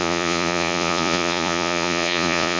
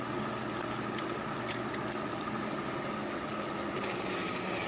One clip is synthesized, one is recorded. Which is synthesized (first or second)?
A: first